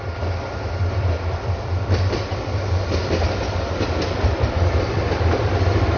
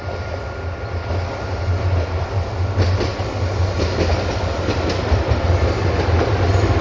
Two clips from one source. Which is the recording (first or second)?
second